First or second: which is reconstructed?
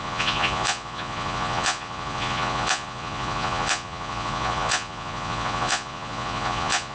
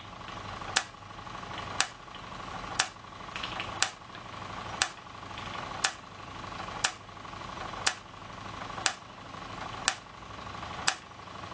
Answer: first